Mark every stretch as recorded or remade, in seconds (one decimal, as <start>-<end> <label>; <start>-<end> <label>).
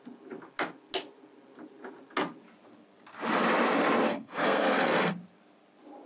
0.0-4.1 recorded; 4.1-5.1 remade; 5.1-6.1 recorded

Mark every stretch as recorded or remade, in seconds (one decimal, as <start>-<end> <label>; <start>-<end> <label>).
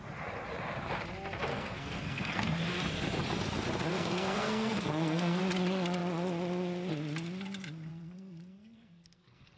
0.0-1.5 recorded; 1.5-2.6 remade; 2.6-3.9 recorded; 3.9-5.4 remade; 5.4-7.9 recorded; 7.9-9.6 remade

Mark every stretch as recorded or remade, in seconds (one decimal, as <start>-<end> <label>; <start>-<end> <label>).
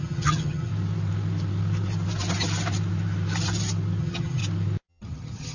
0.0-0.7 remade; 0.7-4.0 recorded; 4.0-4.4 remade; 4.4-4.9 recorded; 4.9-5.5 remade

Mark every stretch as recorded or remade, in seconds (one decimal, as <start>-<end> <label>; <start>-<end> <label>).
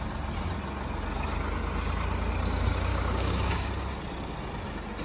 0.0-2.9 recorded; 2.9-3.7 remade; 3.7-5.0 recorded